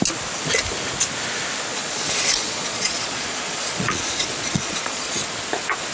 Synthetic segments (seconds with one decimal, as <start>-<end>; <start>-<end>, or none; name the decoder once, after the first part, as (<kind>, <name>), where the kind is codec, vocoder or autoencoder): 1.7-5.2 (vocoder, Vocos)